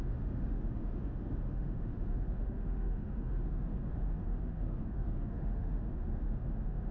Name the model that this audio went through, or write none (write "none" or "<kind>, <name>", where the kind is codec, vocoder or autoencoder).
autoencoder, DAC-VAE